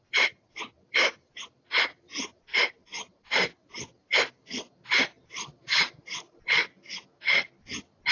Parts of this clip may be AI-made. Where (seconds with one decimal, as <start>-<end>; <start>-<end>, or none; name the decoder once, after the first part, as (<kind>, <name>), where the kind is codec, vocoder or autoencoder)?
0.0-1.3 (vocoder, BigVGAN v2); 1.9-4.2; 5.5-6.0